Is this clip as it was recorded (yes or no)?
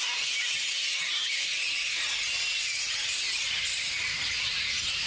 yes